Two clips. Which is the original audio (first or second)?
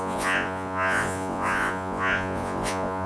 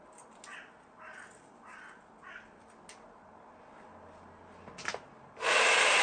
second